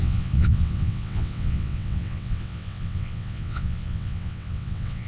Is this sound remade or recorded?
remade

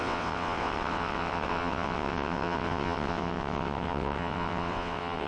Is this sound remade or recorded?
remade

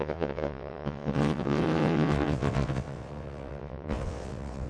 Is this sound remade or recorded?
remade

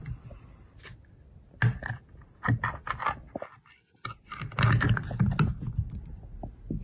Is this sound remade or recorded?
recorded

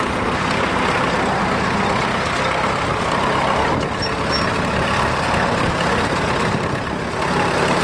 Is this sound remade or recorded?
recorded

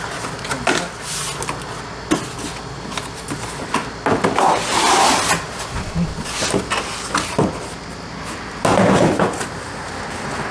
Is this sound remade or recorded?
recorded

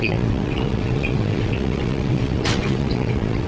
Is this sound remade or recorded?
remade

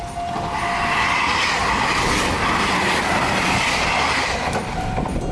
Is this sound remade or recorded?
recorded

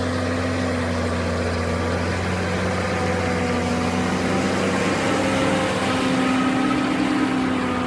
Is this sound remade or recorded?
recorded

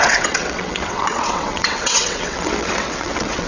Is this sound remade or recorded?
remade